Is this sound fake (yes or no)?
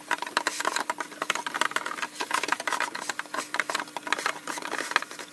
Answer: no